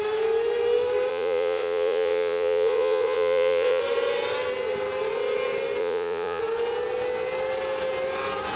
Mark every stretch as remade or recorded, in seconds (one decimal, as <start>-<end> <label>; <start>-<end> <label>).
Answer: 0.0-1.1 recorded; 1.1-3.8 remade; 3.8-5.8 recorded; 5.8-6.4 remade; 6.4-8.6 recorded

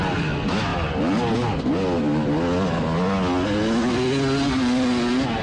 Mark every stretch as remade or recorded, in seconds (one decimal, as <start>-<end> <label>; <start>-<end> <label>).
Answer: 0.0-5.4 recorded

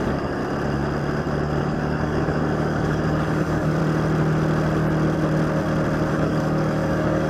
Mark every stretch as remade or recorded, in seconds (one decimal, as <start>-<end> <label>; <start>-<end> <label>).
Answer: 0.0-0.4 remade; 0.4-1.6 recorded; 1.6-3.8 remade; 3.8-6.1 recorded; 6.1-7.3 remade

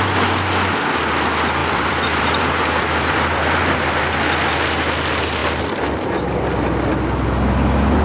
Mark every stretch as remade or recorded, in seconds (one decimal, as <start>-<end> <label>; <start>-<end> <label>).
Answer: 0.0-1.6 recorded; 1.6-4.2 remade; 4.2-8.0 recorded